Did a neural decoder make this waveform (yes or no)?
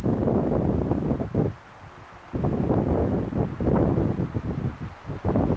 no